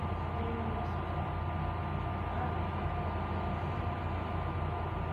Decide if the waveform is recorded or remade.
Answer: recorded